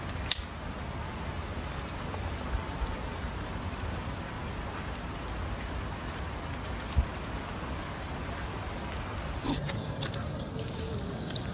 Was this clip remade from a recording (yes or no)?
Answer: no